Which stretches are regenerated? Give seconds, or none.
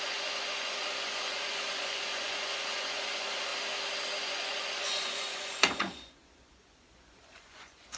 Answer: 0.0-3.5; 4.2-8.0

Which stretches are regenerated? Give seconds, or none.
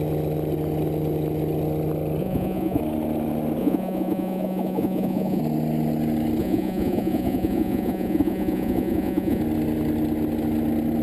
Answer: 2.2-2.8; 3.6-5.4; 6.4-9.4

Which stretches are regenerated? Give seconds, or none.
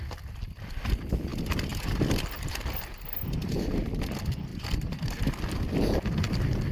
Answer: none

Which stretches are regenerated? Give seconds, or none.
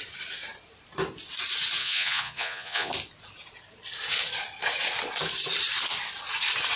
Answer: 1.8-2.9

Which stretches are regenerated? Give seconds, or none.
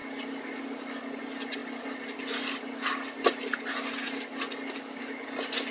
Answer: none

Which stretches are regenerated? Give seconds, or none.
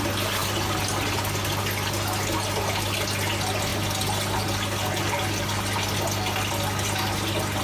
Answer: none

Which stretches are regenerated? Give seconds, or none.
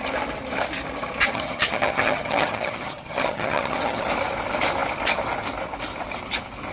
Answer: 1.2-4.0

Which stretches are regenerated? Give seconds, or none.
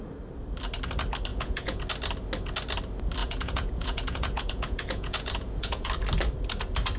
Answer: 1.3-1.8; 3.2-5.9